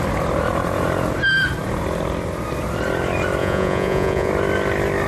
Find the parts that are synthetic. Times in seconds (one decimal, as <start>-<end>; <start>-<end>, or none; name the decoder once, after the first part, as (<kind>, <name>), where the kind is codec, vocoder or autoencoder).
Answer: 3.4-4.3 (vocoder, Vocos)